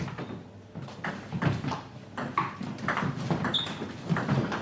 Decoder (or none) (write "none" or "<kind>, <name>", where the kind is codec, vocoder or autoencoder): none